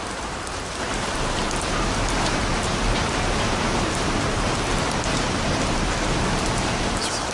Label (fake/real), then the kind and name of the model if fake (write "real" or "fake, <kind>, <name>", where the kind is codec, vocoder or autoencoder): fake, vocoder, BigVGAN v2